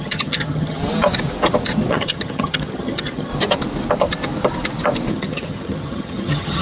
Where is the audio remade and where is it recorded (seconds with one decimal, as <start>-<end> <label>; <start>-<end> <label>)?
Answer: 0.0-0.8 remade; 0.8-1.9 recorded; 1.9-3.3 remade; 3.3-5.1 recorded; 5.1-6.6 remade